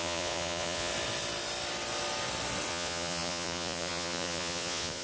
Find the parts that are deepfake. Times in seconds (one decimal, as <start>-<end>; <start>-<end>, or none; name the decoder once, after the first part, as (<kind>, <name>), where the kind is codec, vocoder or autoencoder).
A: 0.0-0.9 (vocoder, Vocos); 2.7-5.0